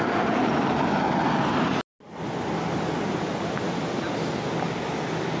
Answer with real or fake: real